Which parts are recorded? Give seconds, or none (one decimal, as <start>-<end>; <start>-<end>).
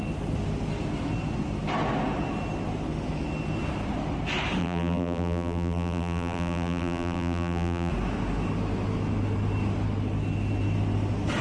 0.0-4.6; 7.9-11.4